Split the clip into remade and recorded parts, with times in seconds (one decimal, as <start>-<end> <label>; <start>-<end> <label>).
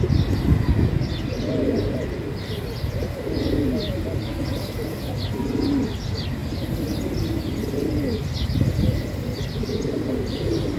0.0-10.8 recorded